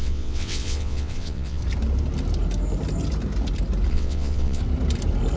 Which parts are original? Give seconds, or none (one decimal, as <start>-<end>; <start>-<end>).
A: 1.6-3.9; 4.6-5.4